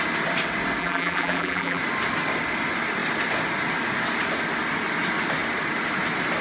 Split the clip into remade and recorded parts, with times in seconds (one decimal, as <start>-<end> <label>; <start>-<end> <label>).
0.0-0.8 recorded; 0.8-1.8 remade; 1.8-6.4 recorded